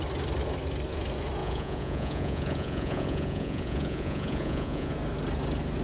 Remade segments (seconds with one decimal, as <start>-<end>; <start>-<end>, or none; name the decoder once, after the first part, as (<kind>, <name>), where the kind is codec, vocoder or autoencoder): 1.4-4.9 (vocoder, Vocos)